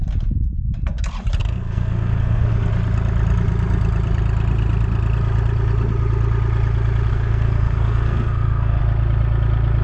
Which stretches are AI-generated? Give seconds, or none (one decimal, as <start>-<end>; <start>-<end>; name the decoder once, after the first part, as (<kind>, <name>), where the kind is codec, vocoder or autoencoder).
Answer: 1.4-2.7 (codec, SNAC); 7.1-8.8